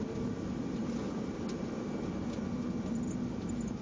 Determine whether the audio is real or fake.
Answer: real